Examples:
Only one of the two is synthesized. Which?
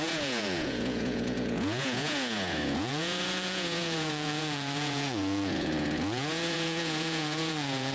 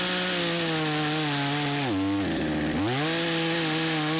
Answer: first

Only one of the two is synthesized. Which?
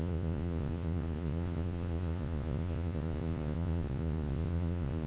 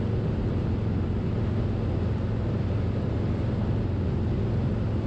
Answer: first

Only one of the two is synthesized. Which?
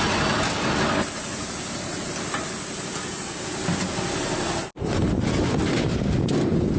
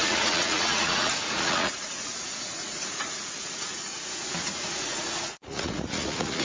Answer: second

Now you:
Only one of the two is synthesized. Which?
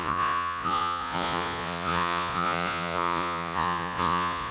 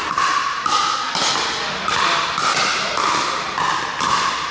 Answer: first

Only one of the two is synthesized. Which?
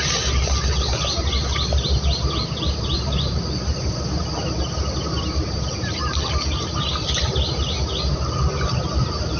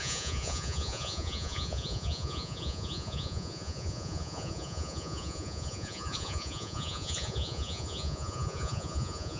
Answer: second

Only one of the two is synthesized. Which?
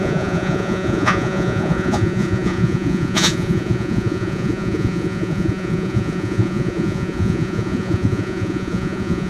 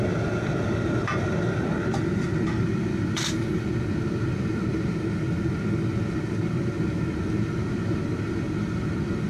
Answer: first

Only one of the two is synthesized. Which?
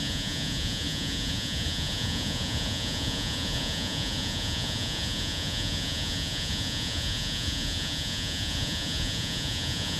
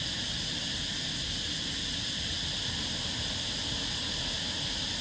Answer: first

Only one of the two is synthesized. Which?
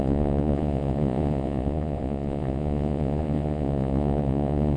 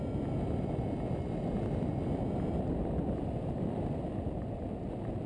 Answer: first